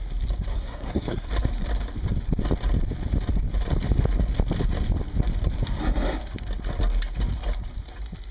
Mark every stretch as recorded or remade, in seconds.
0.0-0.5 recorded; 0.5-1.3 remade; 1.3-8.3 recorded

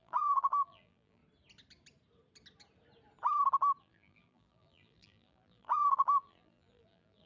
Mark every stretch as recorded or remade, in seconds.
0.0-1.2 remade; 1.2-3.8 recorded; 3.8-7.3 remade

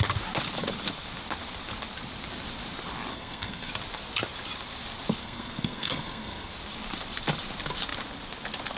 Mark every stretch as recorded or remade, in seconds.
0.0-3.1 recorded; 3.1-3.7 remade; 3.7-5.2 recorded; 5.2-6.5 remade; 6.5-8.8 recorded

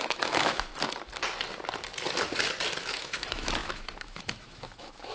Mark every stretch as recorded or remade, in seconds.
0.0-0.7 remade; 0.7-2.8 recorded; 2.8-5.1 remade

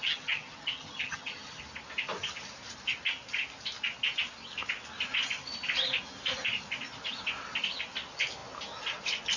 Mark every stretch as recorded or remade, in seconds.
0.0-1.6 remade; 1.6-9.4 recorded

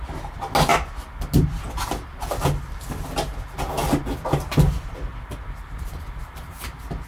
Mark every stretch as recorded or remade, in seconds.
0.0-7.1 recorded

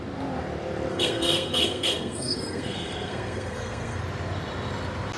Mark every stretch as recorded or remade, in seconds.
0.0-0.9 recorded; 0.9-4.0 remade; 4.0-5.2 recorded